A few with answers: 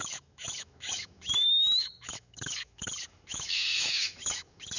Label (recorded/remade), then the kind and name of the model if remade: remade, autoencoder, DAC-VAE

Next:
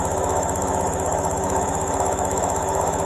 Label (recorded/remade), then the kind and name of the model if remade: remade, autoencoder, DAC-VAE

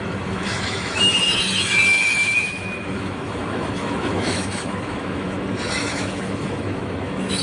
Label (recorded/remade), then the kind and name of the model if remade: remade, autoencoder, DAC-VAE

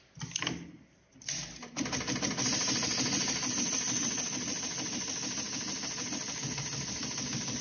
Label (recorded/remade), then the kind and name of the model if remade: recorded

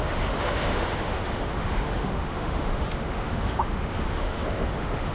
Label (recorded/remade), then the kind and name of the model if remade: remade, autoencoder, DAC-VAE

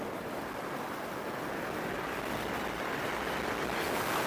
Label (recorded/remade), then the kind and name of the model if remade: recorded